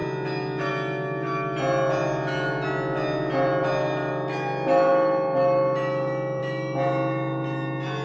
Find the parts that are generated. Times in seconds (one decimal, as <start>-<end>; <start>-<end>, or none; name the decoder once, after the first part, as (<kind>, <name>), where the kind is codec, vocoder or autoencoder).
none